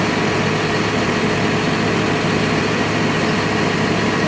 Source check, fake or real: real